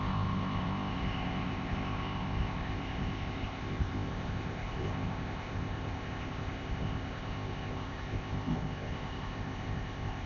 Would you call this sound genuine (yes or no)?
no